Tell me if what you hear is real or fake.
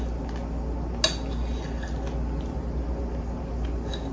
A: real